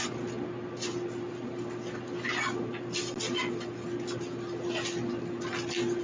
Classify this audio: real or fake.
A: real